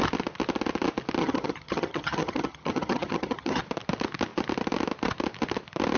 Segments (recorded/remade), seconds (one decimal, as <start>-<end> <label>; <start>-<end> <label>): 0.0-1.2 recorded; 1.2-3.6 remade; 3.6-6.0 recorded